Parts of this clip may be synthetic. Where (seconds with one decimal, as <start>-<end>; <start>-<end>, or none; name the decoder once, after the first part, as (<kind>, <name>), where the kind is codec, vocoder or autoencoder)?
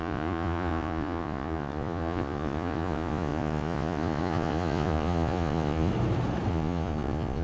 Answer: 0.0-5.9 (vocoder, Vocos); 6.5-7.4